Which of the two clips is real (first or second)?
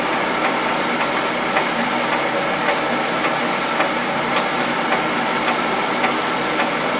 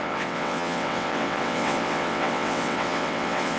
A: first